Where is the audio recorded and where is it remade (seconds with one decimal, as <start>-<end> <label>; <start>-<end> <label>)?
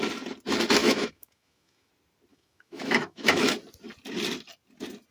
0.0-0.8 recorded; 0.8-1.9 remade; 1.9-2.3 recorded; 2.3-3.5 remade; 3.5-5.1 recorded